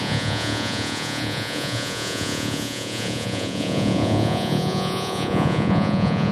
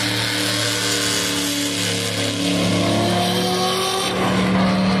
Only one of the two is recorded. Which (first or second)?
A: second